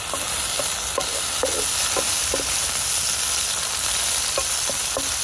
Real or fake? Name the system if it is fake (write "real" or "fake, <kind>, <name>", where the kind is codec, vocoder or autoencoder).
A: real